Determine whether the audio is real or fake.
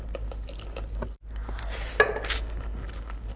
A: real